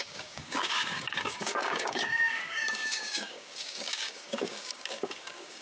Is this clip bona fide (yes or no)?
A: no